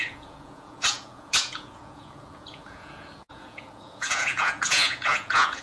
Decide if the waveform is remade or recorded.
remade